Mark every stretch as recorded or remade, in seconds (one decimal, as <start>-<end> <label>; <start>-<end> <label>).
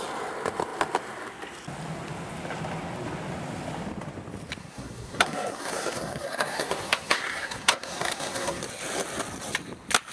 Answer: 0.0-4.6 recorded; 4.6-8.6 remade; 8.6-10.1 recorded